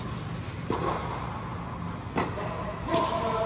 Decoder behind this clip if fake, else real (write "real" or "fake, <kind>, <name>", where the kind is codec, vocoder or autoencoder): real